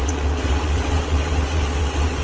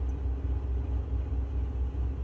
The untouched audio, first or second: second